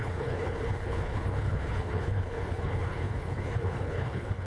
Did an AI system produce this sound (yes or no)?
yes